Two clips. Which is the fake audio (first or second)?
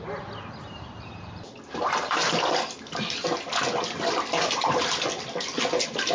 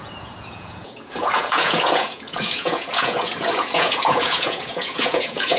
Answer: second